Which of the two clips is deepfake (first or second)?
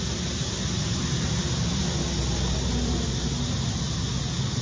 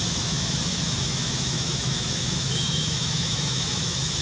second